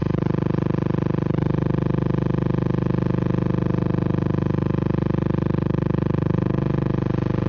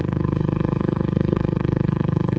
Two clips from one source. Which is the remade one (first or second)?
second